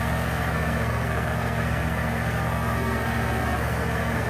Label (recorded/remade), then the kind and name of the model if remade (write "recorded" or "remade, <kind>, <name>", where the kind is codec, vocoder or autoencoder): remade, codec, SNAC